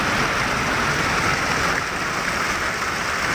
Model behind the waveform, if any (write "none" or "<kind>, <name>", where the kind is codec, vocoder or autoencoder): none